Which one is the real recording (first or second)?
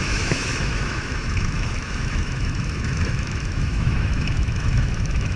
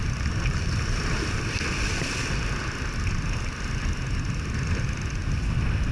second